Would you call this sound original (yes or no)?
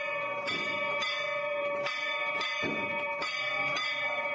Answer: no